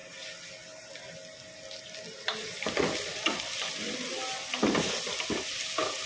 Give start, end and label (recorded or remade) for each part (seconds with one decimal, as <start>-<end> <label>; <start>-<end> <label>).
0.0-6.1 recorded